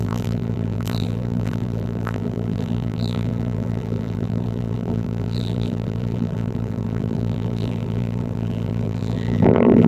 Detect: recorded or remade remade